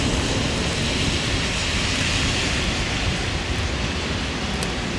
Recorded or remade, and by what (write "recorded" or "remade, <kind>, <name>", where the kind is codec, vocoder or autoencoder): recorded